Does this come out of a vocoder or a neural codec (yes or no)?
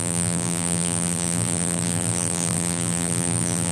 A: yes